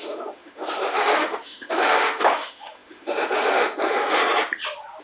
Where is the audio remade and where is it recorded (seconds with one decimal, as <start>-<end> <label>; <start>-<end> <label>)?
0.0-4.2 remade; 4.2-5.0 recorded